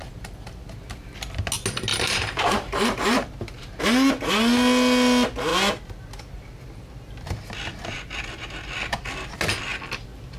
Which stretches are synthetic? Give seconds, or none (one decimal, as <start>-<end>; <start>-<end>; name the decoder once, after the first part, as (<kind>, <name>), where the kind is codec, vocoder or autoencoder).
1.9-3.8 (vocoder, BigVGAN v2)